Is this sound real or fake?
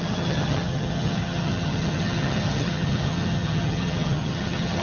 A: fake